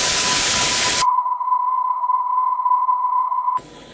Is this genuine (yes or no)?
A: no